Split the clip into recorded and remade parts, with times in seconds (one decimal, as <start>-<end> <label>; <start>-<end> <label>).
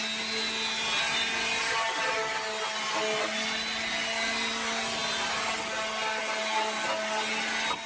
0.0-7.9 recorded